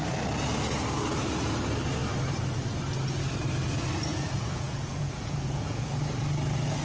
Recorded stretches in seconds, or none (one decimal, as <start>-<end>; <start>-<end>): 0.0-4.1; 5.9-6.8